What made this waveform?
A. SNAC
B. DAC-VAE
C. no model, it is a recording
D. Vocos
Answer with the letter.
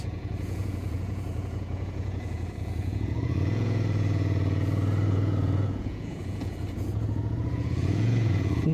D